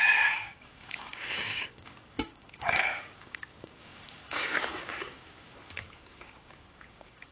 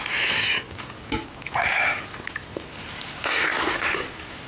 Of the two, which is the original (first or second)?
second